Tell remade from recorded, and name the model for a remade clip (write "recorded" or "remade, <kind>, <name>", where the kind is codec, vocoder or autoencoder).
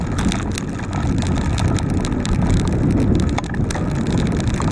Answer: recorded